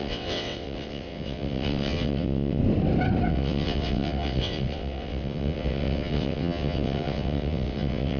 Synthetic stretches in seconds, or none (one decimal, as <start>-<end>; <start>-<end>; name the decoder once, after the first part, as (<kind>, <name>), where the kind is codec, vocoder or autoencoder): 0.0-2.6 (vocoder, WaveNeXt); 3.3-8.2